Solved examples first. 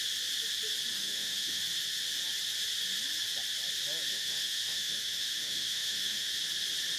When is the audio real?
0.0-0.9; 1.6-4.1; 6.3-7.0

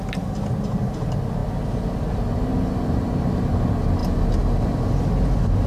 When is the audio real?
0.0-5.7

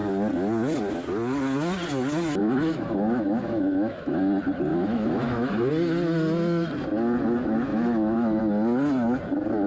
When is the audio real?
0.0-2.4; 4.2-4.7; 5.7-7.7; 8.4-9.7

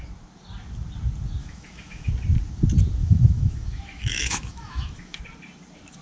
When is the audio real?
0.0-1.4; 2.1-3.0; 5.2-6.0

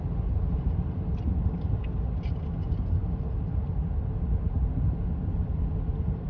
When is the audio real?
0.0-6.3

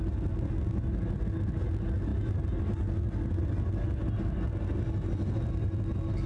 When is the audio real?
0.0-6.3

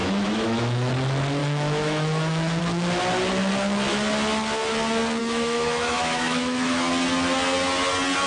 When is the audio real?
0.9-1.4; 2.6-5.2; 6.9-8.3